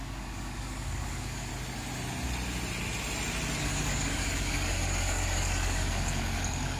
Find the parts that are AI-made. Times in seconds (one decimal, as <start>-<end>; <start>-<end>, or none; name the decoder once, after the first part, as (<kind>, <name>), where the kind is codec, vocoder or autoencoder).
0.0-1.5 (codec, DAC); 3.6-6.8